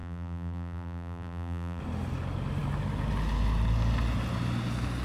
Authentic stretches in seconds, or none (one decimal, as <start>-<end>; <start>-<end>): 1.8-5.0